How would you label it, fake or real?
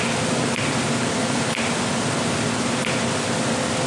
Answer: real